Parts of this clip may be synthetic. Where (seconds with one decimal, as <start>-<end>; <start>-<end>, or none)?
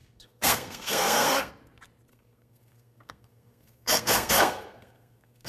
0.0-1.5; 2.1-5.5